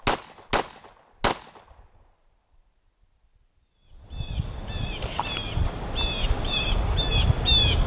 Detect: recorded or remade recorded